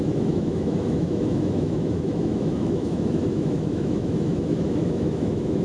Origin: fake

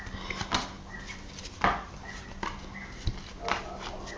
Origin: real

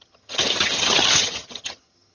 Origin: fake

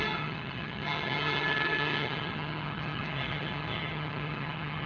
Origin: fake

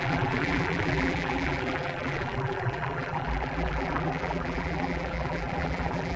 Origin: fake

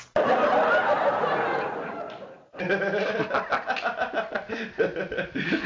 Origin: real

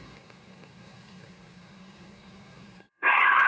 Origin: fake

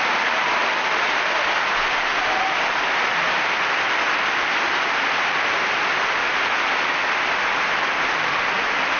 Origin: real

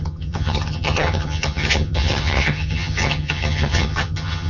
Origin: fake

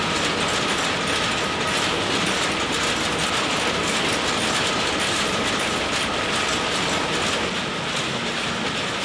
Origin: real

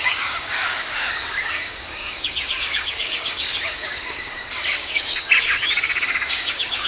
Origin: fake